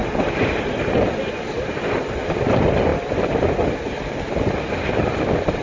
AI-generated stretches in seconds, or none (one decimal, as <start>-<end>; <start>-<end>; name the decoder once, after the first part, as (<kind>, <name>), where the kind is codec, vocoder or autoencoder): none

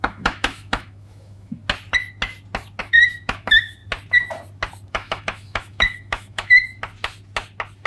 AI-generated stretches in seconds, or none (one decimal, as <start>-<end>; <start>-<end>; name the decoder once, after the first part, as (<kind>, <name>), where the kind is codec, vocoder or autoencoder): 0.0-1.6 (autoencoder, DAC-VAE); 2.8-3.8; 4.9-6.6

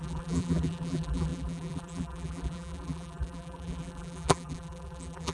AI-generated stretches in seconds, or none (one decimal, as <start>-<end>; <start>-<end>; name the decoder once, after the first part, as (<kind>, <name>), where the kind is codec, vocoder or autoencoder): 0.0-5.3 (vocoder, BigVGAN v2)

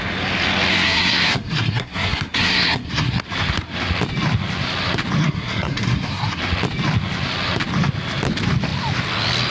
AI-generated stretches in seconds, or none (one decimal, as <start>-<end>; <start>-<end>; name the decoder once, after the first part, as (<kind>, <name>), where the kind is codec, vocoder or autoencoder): 0.7-3.2 (codec, SNAC); 5.2-6.4

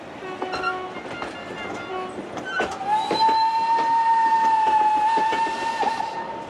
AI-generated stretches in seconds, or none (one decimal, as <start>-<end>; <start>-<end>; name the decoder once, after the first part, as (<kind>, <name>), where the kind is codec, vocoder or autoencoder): none

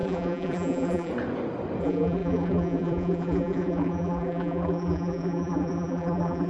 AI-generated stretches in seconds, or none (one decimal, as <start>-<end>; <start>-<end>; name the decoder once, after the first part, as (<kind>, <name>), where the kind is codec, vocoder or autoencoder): 0.0-1.1 (vocoder, BigVGAN v2); 1.8-6.5